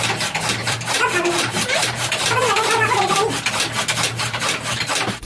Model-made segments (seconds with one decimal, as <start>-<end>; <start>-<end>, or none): 0.6-2.1